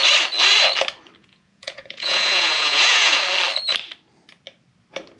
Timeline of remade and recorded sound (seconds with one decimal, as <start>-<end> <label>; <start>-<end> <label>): 0.0-1.2 recorded; 1.2-3.2 remade; 3.2-5.2 recorded